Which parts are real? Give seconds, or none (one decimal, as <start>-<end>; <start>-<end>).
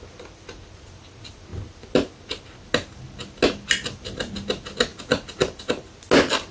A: 0.0-6.5